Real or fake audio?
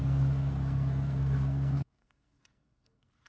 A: fake